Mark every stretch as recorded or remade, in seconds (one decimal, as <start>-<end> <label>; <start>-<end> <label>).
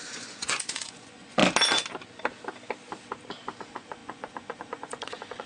0.0-1.4 remade; 1.4-3.6 recorded; 3.6-5.5 remade